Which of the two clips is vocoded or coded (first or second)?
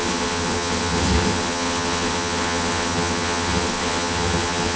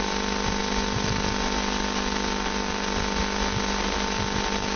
first